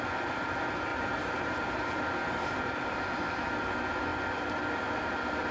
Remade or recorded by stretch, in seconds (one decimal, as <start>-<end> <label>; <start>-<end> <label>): 0.0-0.9 recorded; 0.9-2.6 remade; 2.6-5.5 recorded